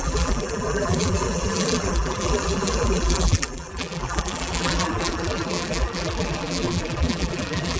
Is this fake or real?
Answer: fake